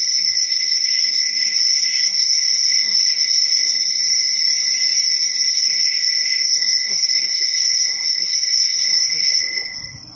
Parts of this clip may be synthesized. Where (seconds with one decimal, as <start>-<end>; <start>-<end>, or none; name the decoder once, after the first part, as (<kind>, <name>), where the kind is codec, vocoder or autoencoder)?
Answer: 0.0-4.0 (codec, SNAC); 5.5-10.2